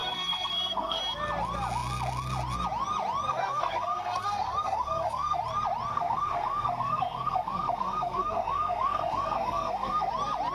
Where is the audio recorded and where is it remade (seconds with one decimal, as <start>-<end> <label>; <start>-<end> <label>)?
0.0-1.0 remade; 1.0-3.3 recorded; 3.3-5.4 remade; 5.4-5.9 recorded; 5.9-10.1 remade; 10.1-10.5 recorded

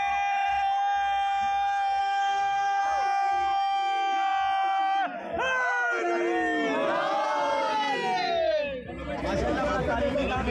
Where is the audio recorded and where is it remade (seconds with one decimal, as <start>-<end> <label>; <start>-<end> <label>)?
0.0-2.0 recorded; 2.0-2.8 remade; 2.8-10.5 recorded

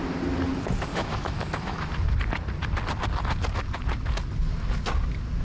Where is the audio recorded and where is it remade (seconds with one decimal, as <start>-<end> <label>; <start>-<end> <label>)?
0.0-0.9 recorded; 0.9-1.9 remade; 1.9-5.4 recorded

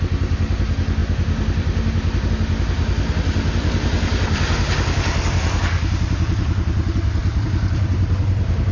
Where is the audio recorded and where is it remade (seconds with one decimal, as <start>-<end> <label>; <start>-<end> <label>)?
0.0-1.0 recorded; 1.0-2.3 remade; 2.3-7.2 recorded; 7.2-8.7 remade

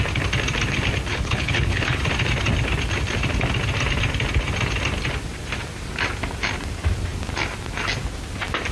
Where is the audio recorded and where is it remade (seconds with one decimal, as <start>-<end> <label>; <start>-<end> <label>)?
0.0-1.1 recorded; 1.1-2.0 remade; 2.0-8.7 recorded